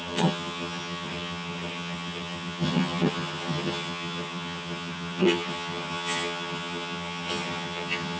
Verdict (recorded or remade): remade